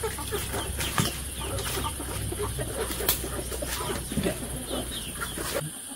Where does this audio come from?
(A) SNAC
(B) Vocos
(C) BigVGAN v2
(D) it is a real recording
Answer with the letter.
D